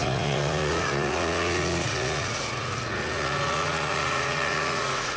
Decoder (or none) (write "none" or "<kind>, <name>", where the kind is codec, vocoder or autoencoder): vocoder, Vocos